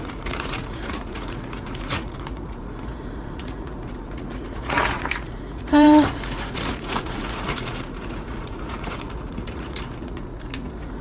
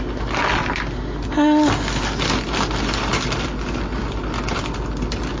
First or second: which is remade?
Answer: first